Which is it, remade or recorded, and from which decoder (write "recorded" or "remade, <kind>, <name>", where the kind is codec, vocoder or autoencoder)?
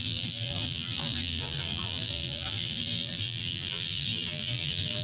remade, vocoder, BigVGAN v2